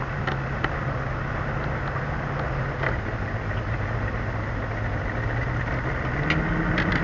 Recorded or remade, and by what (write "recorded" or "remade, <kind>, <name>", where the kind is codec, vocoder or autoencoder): recorded